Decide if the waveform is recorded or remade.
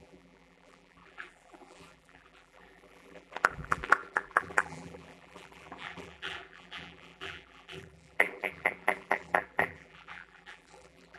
remade